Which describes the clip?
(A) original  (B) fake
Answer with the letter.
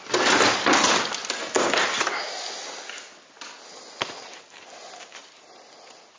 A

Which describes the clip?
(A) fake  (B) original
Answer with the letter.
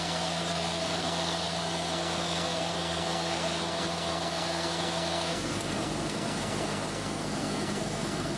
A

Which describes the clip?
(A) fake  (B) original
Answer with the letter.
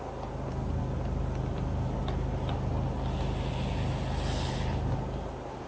B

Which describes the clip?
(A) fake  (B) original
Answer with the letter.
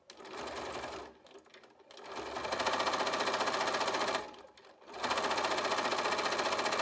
B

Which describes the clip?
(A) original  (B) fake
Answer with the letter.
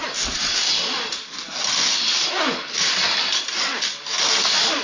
A